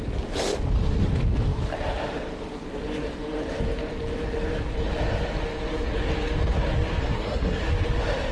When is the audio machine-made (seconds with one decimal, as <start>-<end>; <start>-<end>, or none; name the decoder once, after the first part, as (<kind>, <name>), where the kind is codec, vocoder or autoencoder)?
7.0-7.6 (codec, SNAC)